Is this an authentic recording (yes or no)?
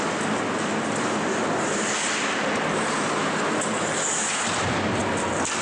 yes